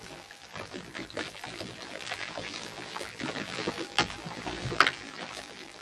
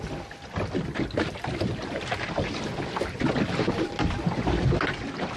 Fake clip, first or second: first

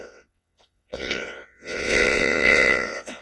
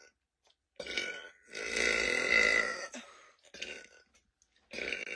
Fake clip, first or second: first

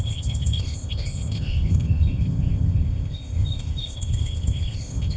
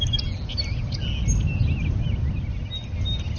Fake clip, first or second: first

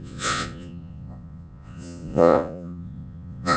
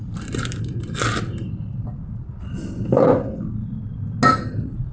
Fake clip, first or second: first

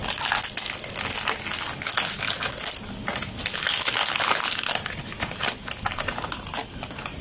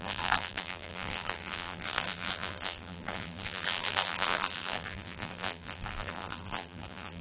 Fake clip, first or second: second